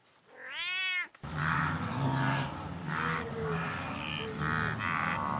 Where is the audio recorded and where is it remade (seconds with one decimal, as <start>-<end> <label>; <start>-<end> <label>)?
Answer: 0.0-1.4 recorded; 1.4-4.1 remade; 4.1-5.4 recorded